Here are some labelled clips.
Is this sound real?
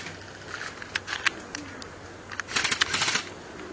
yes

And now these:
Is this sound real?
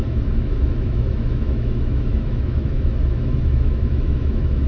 no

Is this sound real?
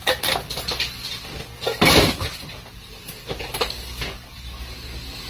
yes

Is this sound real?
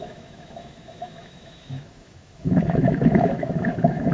no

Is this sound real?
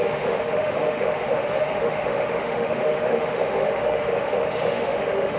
no